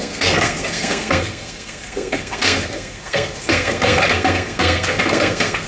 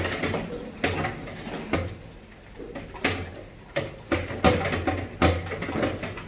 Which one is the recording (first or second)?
second